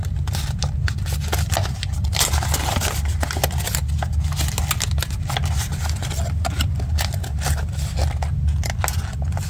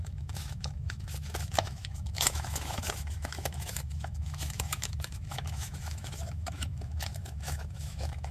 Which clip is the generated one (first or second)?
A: second